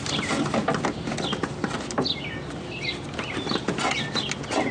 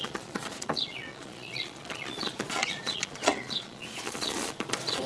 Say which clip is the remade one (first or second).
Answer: second